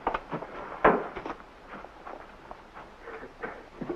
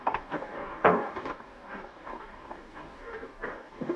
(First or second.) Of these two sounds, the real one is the first